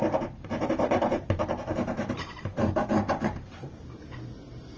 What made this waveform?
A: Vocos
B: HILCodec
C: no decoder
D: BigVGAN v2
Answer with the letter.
D